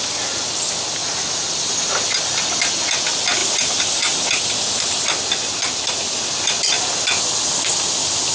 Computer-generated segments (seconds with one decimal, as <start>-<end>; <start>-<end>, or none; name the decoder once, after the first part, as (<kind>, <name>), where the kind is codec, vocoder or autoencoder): none

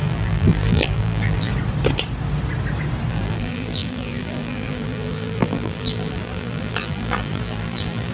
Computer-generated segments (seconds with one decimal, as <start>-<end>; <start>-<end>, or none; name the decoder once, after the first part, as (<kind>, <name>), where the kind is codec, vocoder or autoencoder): 0.0-1.5 (vocoder, BigVGAN v2); 3.1-8.1

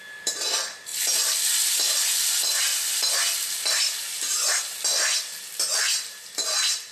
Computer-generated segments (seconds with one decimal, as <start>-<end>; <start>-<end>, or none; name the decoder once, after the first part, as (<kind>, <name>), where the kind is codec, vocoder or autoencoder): 0.0-0.9 (vocoder, BigVGAN v2); 1.4-2.7; 3.7-6.9

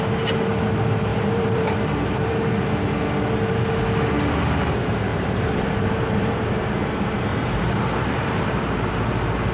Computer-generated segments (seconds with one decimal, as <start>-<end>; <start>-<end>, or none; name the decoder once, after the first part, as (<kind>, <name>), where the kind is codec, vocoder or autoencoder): 1.1-2.5 (vocoder, BigVGAN v2); 5.1-6.5; 7.3-9.1